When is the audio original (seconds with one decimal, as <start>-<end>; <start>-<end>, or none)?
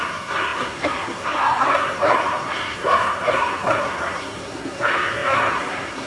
none